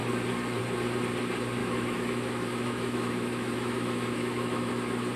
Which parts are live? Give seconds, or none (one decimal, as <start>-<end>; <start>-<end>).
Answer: 0.0-1.6; 4.7-5.2